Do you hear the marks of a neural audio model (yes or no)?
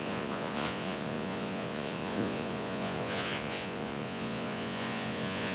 yes